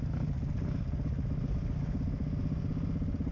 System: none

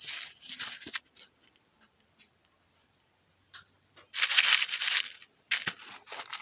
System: none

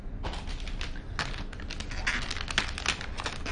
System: none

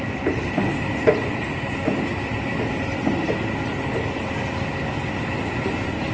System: none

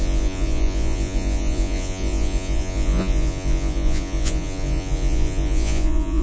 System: vocoder, Vocos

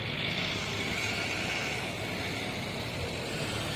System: none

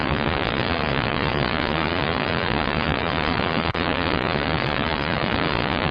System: vocoder, Vocos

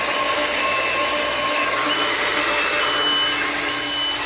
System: none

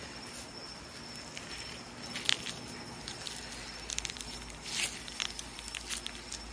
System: none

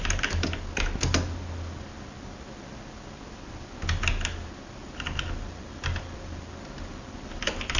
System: none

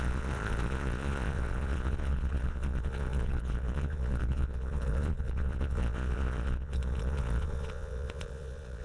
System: vocoder, Vocos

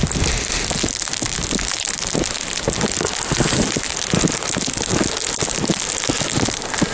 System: none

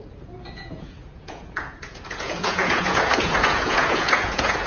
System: vocoder, Vocos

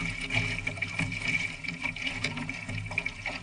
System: vocoder, Vocos